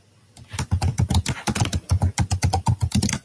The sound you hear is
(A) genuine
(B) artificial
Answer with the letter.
A